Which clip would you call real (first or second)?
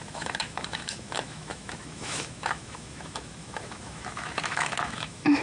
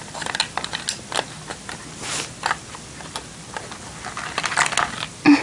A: second